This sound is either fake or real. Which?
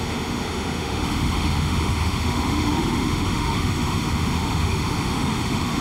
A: fake